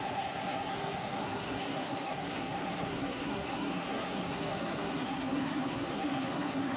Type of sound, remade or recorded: remade